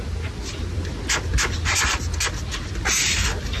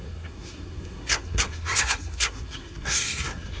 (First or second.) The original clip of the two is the first